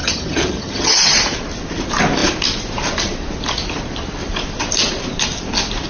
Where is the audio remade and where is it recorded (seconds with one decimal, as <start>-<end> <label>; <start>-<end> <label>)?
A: 0.0-1.0 remade; 1.0-5.9 recorded